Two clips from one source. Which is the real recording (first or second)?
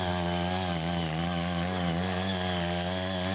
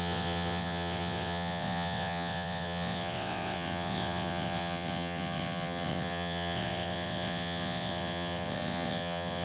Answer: first